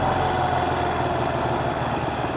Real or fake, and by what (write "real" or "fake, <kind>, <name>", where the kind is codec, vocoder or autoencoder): real